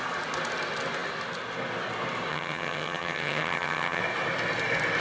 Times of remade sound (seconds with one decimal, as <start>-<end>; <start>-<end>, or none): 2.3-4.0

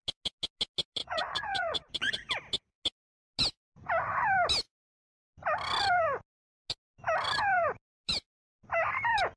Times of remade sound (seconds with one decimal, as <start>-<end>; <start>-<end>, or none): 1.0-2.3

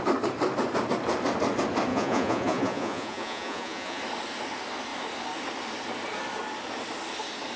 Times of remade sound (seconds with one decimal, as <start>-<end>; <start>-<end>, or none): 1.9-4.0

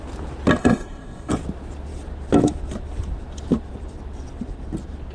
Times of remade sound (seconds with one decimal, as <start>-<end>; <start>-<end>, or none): 0.6-1.3

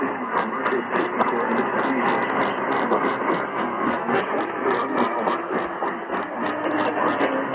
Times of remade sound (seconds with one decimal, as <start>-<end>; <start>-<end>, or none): 3.5-4.2

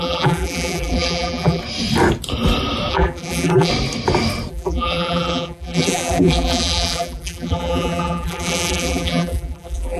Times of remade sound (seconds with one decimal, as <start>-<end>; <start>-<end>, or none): 0.0-1.6; 2.9-3.7; 4.5-10.0